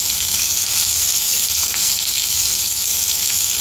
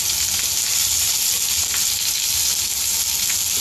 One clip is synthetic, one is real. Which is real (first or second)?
second